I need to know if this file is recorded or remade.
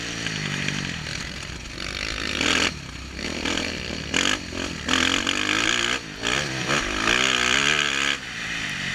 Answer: recorded